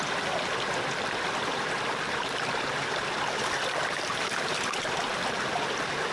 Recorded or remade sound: recorded